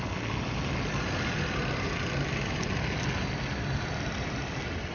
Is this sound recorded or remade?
recorded